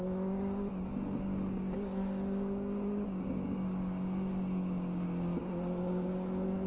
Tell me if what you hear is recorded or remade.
remade